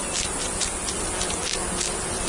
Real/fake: real